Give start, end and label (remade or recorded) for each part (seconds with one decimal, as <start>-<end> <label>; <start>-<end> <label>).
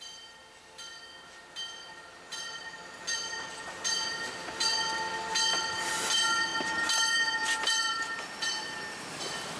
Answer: 0.0-0.4 remade; 0.4-5.6 recorded; 5.6-6.5 remade; 6.5-7.9 recorded; 7.9-9.6 remade